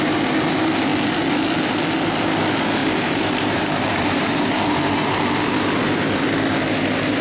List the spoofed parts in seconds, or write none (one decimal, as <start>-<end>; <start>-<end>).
2.8-5.8